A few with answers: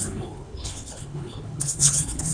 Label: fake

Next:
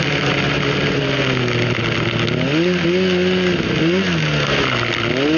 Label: real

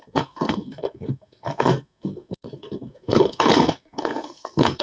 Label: fake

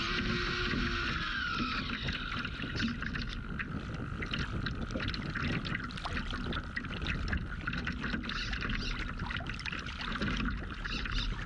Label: real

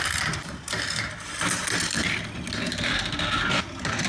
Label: real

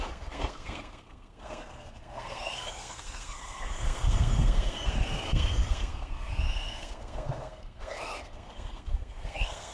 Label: fake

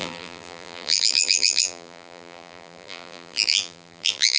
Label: fake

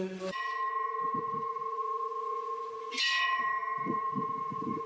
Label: fake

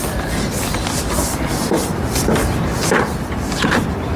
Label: fake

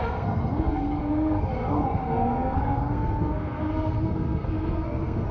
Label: fake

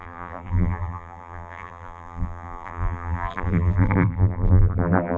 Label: fake